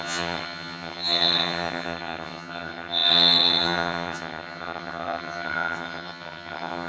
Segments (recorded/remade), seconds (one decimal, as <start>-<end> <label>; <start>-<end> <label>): 0.0-6.9 remade

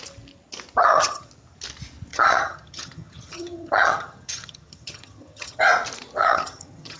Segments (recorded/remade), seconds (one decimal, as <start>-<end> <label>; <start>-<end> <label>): 0.0-0.8 recorded; 0.8-1.3 remade; 1.3-2.1 recorded; 2.1-5.6 remade; 5.6-6.2 recorded; 6.2-7.0 remade

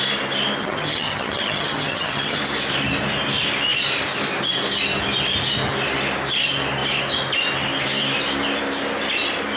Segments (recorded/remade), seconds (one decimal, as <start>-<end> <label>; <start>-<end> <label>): 0.0-0.6 recorded; 0.6-2.4 remade; 2.4-9.6 recorded

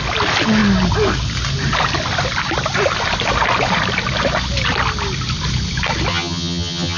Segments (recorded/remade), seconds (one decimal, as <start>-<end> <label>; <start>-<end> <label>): 0.0-6.1 recorded; 6.1-7.0 remade